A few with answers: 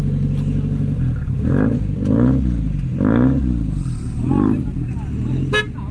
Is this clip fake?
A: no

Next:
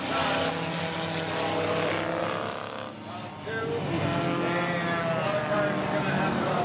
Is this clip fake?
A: no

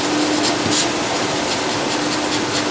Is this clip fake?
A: no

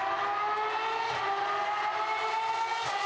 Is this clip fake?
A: no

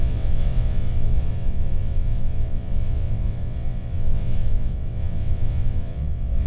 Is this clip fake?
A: yes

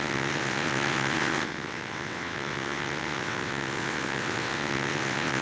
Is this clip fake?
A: yes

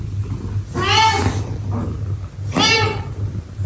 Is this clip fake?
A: no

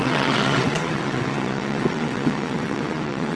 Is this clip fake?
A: yes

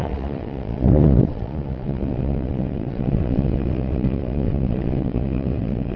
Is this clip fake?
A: yes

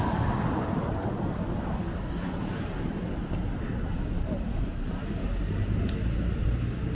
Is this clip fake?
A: no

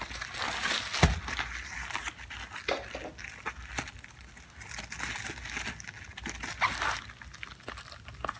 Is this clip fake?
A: no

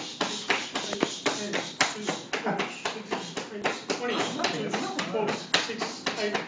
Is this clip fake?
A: no